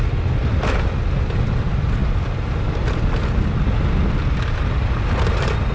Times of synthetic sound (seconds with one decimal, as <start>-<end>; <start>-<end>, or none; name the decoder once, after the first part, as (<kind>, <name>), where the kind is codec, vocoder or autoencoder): none